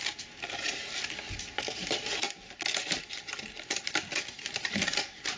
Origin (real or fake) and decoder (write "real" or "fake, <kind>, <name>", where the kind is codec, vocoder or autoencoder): real